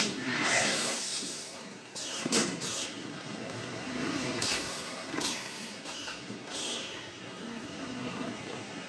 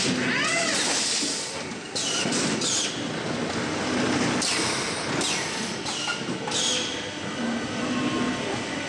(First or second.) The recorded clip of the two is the second